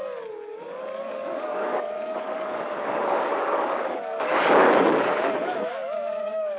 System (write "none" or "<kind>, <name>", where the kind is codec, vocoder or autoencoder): codec, DAC